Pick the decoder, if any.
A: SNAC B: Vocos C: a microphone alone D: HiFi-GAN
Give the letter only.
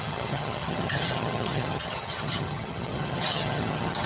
D